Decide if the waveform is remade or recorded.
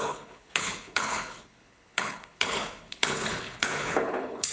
remade